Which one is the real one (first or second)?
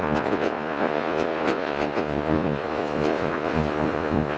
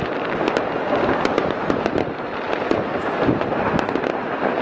second